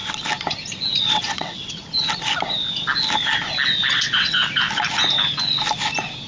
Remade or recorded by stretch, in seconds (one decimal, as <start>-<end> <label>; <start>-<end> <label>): 0.0-1.0 recorded; 1.0-1.8 remade; 1.8-3.9 recorded; 3.9-4.4 remade; 4.4-6.3 recorded

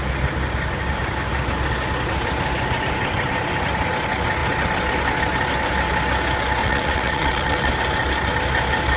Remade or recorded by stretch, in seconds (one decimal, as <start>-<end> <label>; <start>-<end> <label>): 0.0-6.6 recorded; 6.6-7.7 remade; 7.7-9.0 recorded

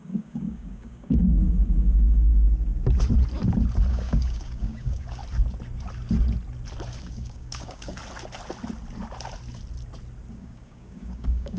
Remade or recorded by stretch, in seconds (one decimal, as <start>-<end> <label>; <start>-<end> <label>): 0.0-2.3 remade; 2.3-3.9 recorded; 3.9-5.2 remade; 5.2-7.0 recorded; 7.0-8.0 remade; 8.0-10.3 recorded; 10.3-11.6 remade